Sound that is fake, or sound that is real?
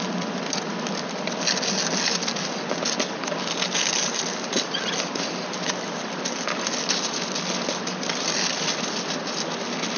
real